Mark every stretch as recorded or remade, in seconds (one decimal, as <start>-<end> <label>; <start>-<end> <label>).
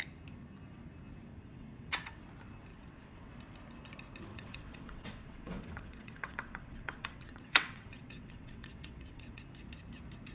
0.0-1.3 recorded; 1.3-2.2 remade; 2.2-2.7 recorded; 2.7-3.3 remade; 3.3-4.3 recorded; 4.3-9.4 remade; 9.4-10.3 recorded